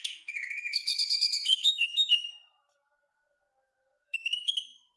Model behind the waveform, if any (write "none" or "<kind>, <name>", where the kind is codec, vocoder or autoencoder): codec, SNAC